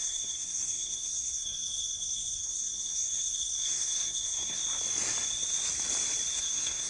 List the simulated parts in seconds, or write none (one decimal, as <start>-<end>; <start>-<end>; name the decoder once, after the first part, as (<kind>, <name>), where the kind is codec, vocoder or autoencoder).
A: 0.0-4.6 (codec, SNAC); 6.4-6.9